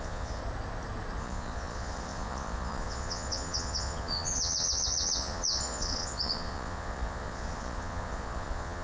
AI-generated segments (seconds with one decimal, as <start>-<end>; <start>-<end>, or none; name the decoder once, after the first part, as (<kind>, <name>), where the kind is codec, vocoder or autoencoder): 0.0-0.4 (vocoder, Vocos); 1.2-8.8